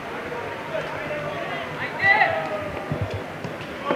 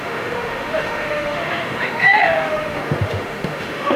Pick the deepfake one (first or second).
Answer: second